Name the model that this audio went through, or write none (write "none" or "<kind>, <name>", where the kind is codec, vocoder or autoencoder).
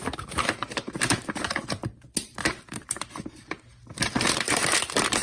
vocoder, BigVGAN v2